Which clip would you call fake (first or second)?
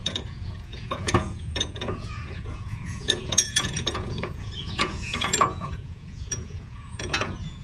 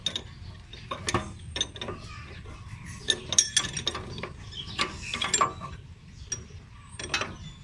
first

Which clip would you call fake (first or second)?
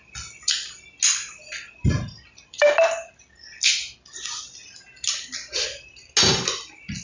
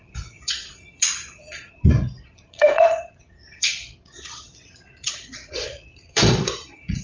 second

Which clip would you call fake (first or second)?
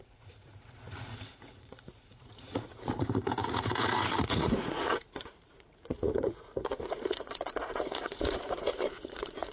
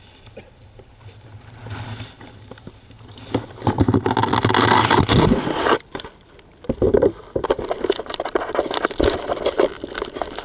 first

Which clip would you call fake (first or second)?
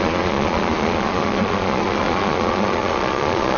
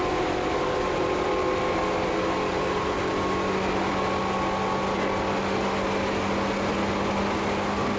first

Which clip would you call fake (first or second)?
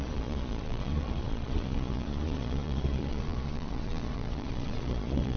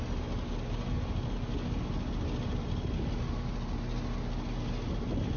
first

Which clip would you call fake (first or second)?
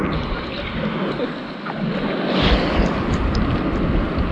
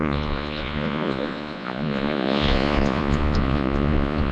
second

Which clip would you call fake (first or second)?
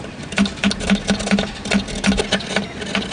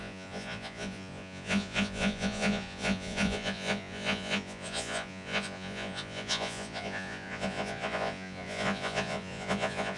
second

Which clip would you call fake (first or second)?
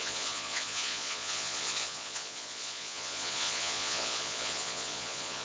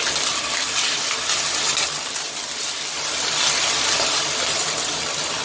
first